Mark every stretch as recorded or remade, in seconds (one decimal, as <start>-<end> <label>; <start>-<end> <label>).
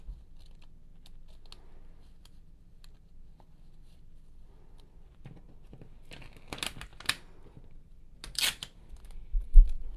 0.0-10.0 recorded